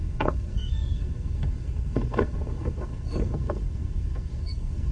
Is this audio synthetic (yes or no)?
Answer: yes